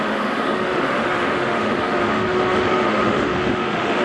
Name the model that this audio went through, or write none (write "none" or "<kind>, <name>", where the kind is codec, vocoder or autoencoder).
autoencoder, DAC-VAE